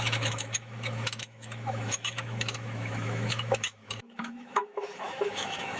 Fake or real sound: fake